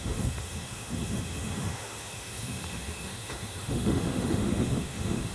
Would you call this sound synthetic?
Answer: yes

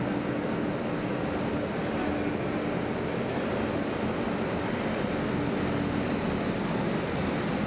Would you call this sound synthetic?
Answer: no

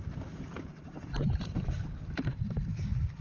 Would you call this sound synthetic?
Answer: yes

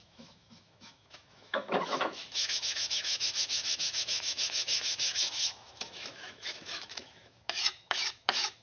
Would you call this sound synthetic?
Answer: yes